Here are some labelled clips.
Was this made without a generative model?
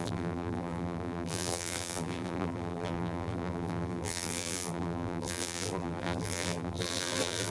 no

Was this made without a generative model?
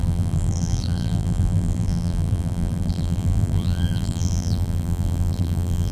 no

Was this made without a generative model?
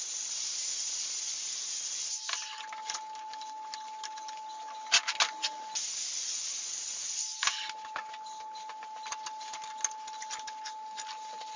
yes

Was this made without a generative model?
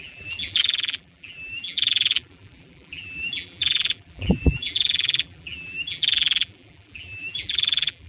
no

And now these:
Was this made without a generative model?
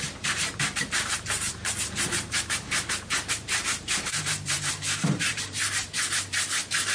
no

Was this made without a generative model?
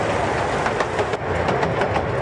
yes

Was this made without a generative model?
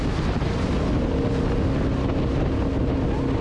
yes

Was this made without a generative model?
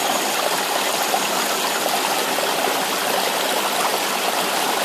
yes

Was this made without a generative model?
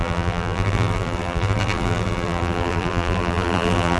no